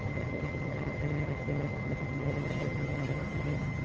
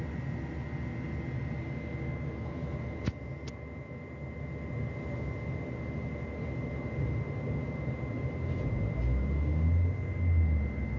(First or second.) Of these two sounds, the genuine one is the second